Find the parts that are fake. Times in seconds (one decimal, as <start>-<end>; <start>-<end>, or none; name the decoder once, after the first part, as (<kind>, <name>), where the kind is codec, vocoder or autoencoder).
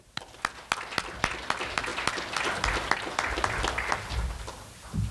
none